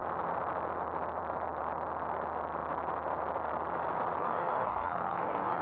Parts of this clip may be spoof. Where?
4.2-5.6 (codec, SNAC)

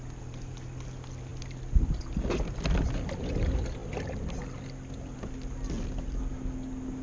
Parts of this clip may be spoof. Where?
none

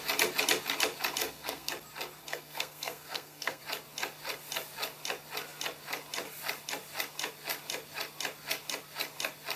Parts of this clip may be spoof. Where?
1.2-1.7 (codec, SNAC); 2.2-3.6

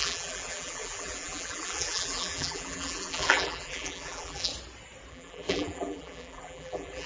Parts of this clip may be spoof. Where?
0.0-4.5 (vocoder, BigVGAN v2); 5.1-7.1